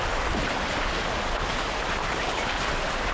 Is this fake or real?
real